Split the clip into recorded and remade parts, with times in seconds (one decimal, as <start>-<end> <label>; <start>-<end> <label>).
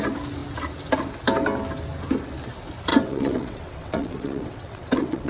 0.0-2.9 recorded; 2.9-5.3 remade